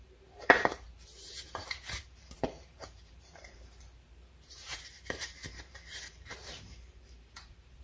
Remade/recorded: remade